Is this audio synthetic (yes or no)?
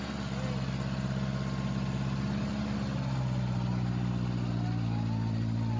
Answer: no